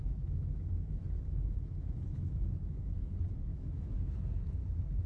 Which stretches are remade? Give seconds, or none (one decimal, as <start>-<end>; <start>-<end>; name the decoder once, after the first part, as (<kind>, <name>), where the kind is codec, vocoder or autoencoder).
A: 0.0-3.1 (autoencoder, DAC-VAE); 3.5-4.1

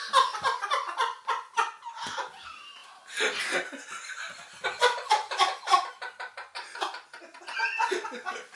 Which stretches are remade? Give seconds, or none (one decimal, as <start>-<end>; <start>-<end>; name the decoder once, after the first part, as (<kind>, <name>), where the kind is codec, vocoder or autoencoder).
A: none

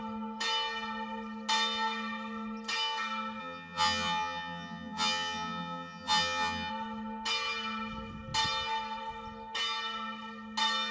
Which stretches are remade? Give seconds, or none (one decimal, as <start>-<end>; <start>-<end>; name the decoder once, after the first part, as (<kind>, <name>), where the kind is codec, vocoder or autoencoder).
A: 3.4-6.7 (vocoder, HiFi-GAN)